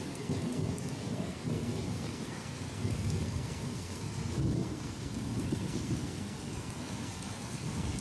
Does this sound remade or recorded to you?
remade